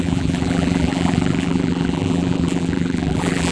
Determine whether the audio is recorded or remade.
remade